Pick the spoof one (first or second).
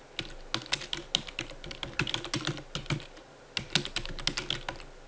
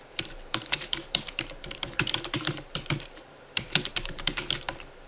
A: second